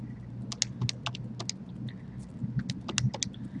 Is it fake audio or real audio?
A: real